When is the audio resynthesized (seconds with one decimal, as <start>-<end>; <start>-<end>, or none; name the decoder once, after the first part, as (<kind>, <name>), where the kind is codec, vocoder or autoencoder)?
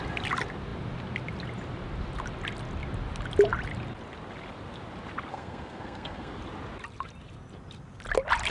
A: 5.3-6.4 (codec, SNAC)